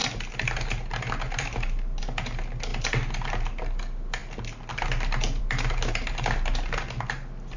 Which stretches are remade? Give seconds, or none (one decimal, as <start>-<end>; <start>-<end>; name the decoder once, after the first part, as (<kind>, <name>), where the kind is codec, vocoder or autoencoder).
none

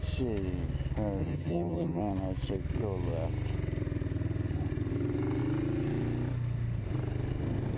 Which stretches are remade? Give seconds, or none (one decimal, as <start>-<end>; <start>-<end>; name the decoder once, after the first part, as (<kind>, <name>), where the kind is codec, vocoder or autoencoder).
1.2-2.0 (vocoder, HiFi-GAN)